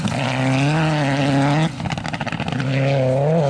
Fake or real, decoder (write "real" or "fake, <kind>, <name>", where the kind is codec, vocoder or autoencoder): real